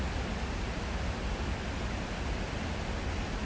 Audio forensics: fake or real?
real